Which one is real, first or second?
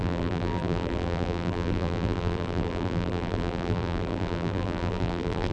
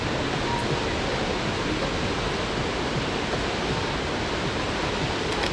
second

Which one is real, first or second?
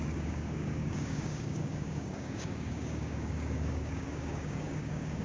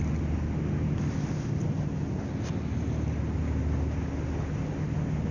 second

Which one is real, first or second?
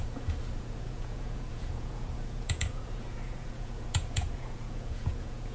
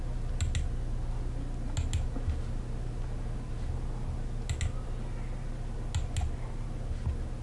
second